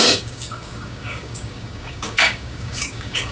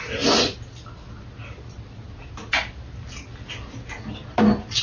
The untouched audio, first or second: second